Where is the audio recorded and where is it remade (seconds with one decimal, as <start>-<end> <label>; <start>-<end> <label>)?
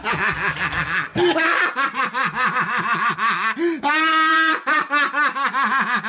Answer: 0.0-1.1 recorded; 1.1-3.6 remade; 3.6-4.3 recorded; 4.3-4.9 remade; 4.9-6.1 recorded